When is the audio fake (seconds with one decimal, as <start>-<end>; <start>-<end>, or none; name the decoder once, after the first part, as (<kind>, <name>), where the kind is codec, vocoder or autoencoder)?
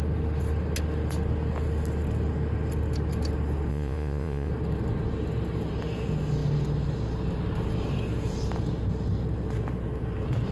3.7-4.5 (vocoder, Vocos)